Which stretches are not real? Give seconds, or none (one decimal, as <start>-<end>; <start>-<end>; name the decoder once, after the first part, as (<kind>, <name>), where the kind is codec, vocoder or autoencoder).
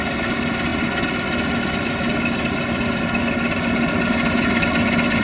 none